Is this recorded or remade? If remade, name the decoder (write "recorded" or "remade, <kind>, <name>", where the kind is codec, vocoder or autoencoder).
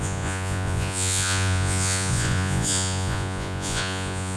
remade, vocoder, Vocos